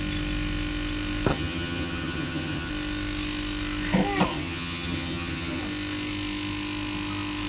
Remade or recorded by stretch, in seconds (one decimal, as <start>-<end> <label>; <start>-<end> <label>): 0.0-1.3 recorded; 1.3-2.7 remade; 2.7-4.3 recorded; 4.3-5.6 remade; 5.6-7.5 recorded